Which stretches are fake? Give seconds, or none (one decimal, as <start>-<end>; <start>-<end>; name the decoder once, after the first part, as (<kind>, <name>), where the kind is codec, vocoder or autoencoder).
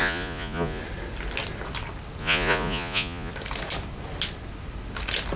0.0-0.8 (vocoder, Vocos); 2.2-3.3